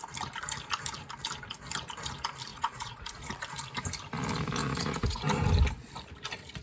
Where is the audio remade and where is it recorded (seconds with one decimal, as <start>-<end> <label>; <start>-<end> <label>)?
0.0-2.5 recorded; 2.5-3.3 remade; 3.3-4.6 recorded; 4.6-5.2 remade; 5.2-6.6 recorded